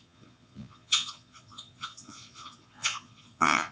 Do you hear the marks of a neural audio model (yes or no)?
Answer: yes